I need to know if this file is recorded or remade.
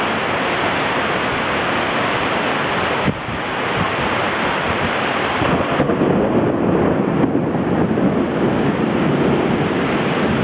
recorded